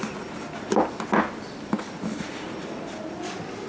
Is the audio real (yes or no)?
yes